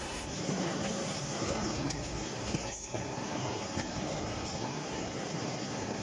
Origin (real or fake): fake